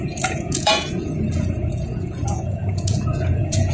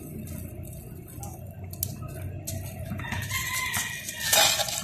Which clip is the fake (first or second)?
first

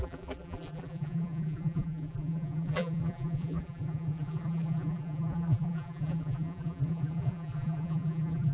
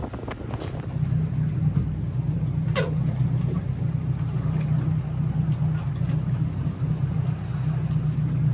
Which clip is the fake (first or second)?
first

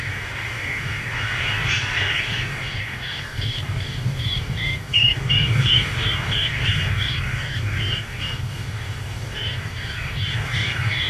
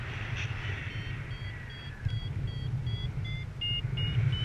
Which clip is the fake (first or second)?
first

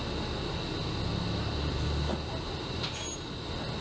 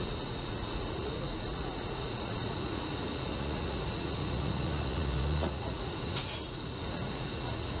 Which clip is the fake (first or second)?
second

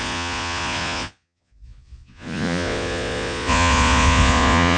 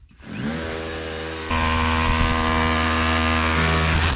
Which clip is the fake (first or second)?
first